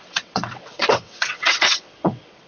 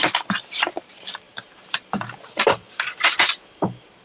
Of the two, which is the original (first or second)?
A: second